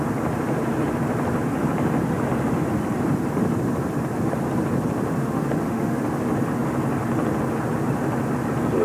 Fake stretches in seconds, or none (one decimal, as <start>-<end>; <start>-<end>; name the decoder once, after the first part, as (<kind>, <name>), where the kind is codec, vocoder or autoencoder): 5.2-6.0 (autoencoder, DAC-VAE)